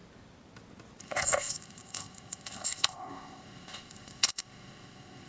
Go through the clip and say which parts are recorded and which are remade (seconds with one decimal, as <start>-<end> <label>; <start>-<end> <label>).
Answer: 0.0-1.0 recorded; 1.0-5.3 remade